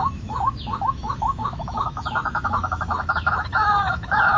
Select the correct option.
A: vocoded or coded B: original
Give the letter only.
A